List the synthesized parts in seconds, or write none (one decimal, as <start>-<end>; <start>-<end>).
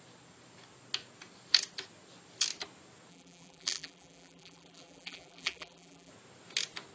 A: 3.1-6.1